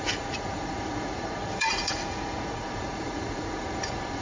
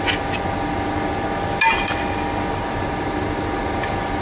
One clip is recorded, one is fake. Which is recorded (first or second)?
second